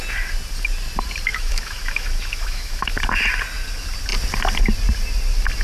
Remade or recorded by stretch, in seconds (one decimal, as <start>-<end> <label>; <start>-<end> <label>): 0.0-1.3 recorded; 1.3-3.0 remade; 3.0-5.6 recorded